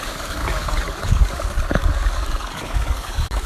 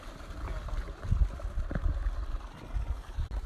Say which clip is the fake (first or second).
first